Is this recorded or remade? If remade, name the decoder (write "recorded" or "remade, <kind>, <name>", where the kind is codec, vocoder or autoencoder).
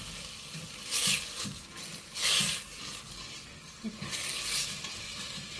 recorded